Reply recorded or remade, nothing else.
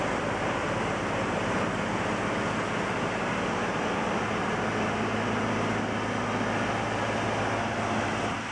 recorded